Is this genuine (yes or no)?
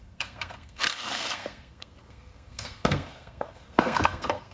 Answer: no